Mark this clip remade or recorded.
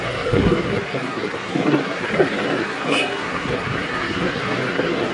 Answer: remade